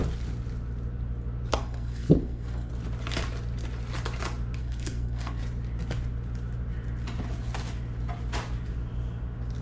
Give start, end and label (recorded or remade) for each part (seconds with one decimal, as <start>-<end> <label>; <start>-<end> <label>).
0.0-1.5 recorded; 1.5-2.7 remade; 2.7-4.6 recorded; 4.6-5.4 remade; 5.4-9.6 recorded